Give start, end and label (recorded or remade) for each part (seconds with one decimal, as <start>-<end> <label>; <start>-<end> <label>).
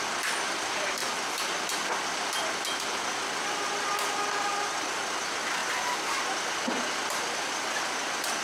0.0-1.0 recorded; 1.0-1.5 remade; 1.5-5.6 recorded; 5.6-6.2 remade; 6.2-8.4 recorded